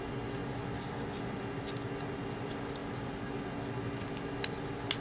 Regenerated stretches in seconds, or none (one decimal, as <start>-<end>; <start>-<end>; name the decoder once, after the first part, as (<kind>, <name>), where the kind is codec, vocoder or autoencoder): none